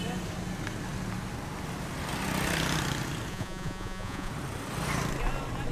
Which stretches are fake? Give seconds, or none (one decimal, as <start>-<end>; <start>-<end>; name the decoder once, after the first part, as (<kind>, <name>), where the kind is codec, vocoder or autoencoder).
3.3-4.3 (vocoder, Vocos)